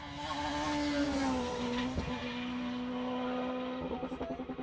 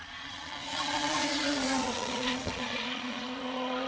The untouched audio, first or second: first